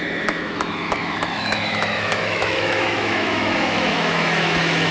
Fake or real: fake